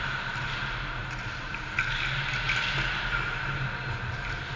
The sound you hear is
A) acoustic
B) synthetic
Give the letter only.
A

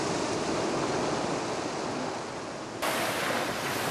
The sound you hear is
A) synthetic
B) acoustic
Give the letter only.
B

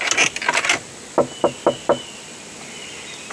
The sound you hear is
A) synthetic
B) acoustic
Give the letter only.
B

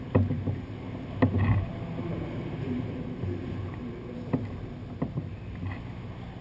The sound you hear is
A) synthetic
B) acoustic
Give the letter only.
B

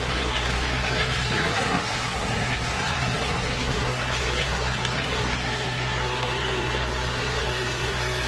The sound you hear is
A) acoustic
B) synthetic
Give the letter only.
B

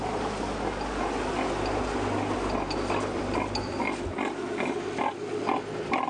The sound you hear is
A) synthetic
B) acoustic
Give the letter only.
B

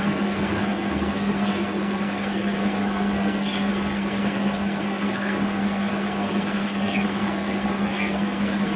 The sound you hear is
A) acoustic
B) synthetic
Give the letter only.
B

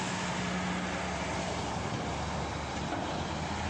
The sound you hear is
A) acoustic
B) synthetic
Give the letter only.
A